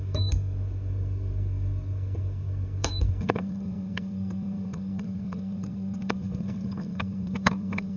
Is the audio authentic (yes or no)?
no